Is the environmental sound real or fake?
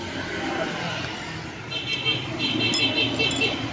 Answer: real